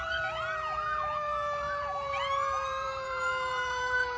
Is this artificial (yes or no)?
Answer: yes